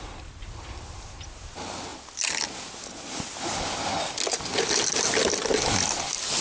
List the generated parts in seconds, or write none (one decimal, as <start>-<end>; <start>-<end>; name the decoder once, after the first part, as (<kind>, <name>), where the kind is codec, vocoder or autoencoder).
none